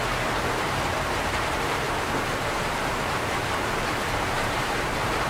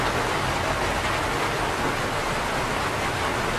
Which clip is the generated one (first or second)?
first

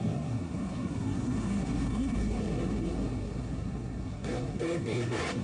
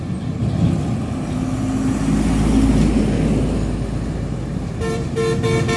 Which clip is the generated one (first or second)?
first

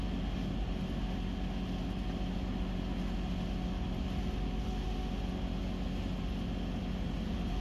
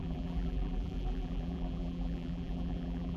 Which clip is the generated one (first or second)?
second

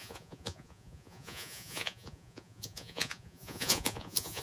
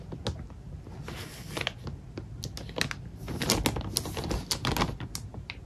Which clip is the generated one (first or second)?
first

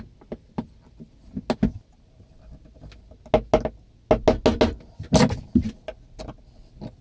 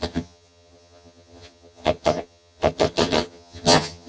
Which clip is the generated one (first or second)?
second